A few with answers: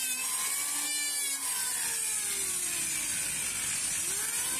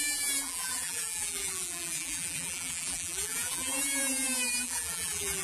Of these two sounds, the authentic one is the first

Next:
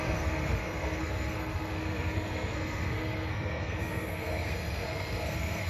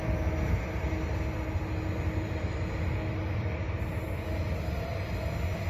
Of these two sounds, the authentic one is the second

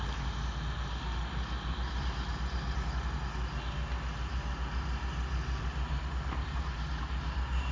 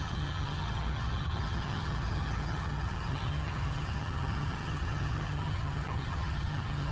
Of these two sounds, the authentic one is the first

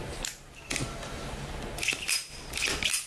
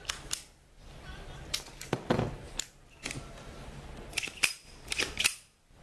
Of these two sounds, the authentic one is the first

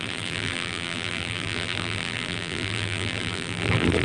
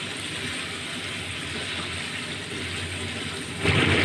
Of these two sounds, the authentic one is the second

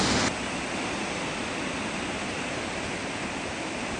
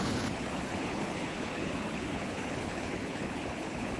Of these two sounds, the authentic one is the first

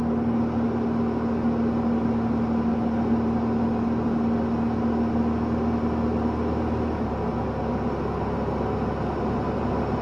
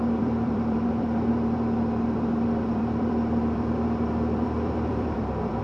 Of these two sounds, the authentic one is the first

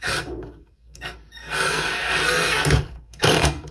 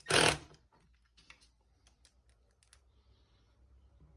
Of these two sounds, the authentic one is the second